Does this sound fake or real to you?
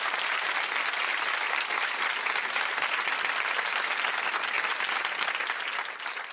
real